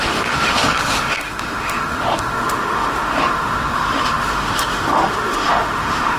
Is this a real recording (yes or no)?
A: no